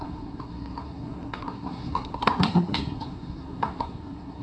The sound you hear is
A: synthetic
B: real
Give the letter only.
A